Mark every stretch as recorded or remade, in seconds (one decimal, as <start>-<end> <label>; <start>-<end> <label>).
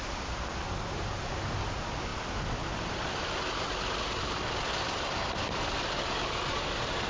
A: 0.0-7.1 recorded